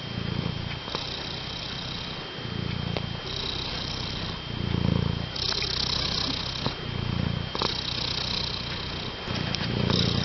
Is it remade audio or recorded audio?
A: recorded